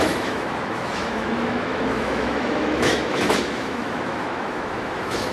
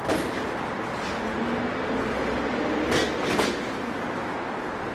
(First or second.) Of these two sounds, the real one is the second